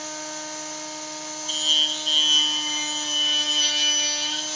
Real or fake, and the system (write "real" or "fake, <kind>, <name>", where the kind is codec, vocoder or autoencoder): real